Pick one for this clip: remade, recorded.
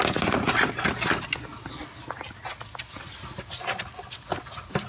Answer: recorded